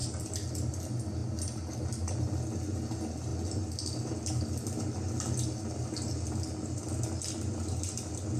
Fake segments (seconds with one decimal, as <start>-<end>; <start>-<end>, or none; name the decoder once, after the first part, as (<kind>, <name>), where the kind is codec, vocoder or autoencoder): none